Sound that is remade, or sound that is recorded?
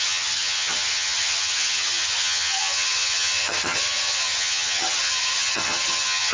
remade